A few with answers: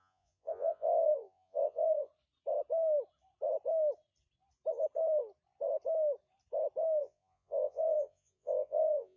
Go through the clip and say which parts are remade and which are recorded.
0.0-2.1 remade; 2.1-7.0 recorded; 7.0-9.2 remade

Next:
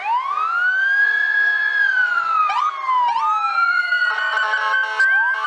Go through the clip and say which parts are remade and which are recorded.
0.0-1.0 recorded; 1.0-2.6 remade; 2.6-3.5 recorded; 3.5-4.7 remade; 4.7-5.5 recorded

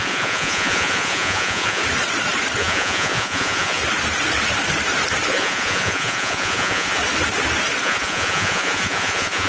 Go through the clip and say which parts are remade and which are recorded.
0.0-1.8 remade; 1.8-2.6 recorded; 2.6-3.8 remade; 3.8-5.3 recorded; 5.3-7.0 remade; 7.0-7.8 recorded; 7.8-9.5 remade

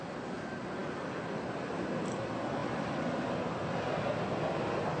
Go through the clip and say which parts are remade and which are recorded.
0.0-5.0 recorded